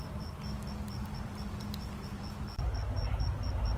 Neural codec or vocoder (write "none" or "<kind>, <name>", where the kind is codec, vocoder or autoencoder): none